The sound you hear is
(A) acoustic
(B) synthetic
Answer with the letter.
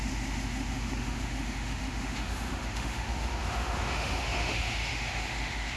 B